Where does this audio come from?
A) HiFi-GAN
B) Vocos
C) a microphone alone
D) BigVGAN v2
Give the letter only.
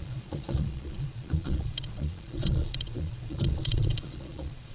B